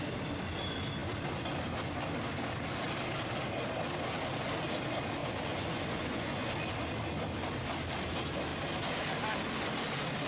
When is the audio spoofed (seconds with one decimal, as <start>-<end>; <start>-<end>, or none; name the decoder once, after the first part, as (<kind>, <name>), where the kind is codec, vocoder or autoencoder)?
5.2-6.5 (vocoder, Vocos)